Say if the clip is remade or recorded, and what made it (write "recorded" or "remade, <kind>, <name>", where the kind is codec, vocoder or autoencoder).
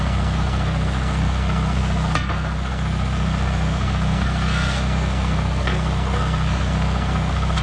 remade, codec, SNAC